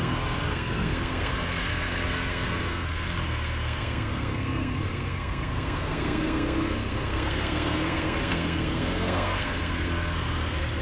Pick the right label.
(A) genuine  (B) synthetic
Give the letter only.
B